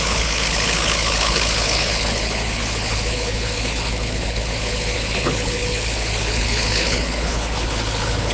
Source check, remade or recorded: remade